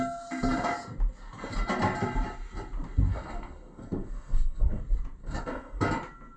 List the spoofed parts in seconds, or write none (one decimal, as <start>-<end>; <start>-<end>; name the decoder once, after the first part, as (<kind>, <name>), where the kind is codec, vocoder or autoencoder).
3.1-4.8 (codec, SNAC); 5.2-5.8